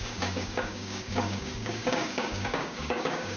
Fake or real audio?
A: fake